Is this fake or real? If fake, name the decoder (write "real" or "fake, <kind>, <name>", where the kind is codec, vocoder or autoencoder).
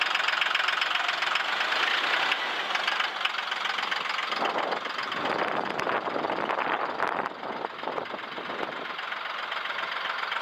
real